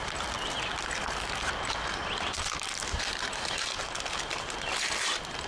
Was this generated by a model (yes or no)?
no